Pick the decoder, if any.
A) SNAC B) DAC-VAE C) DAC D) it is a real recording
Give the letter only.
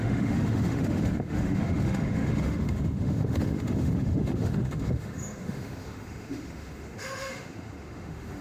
B